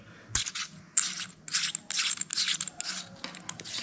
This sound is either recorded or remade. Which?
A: recorded